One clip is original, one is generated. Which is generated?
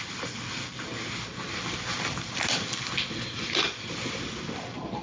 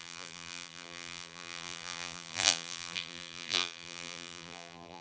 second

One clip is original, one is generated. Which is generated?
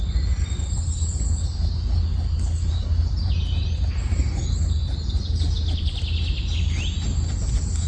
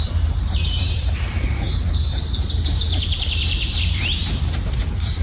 second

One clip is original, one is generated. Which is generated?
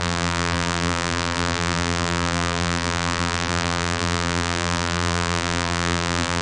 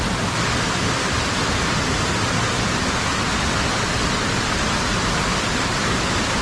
first